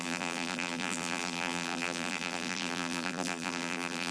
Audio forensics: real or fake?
fake